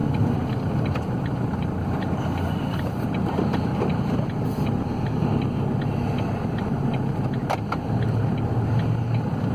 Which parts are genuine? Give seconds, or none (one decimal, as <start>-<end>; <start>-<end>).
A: 0.0-9.5